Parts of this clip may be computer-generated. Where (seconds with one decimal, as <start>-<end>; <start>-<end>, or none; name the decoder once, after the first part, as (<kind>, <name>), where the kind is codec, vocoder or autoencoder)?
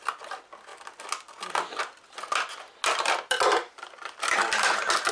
none